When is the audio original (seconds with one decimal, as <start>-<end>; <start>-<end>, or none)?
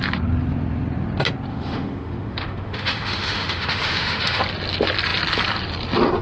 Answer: 0.0-1.5; 4.4-6.2